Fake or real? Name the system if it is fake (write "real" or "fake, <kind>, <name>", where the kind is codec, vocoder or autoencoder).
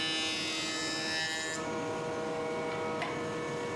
real